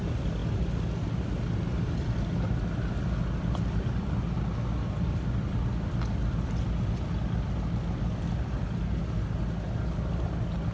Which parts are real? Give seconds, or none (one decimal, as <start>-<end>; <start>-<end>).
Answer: 0.0-10.7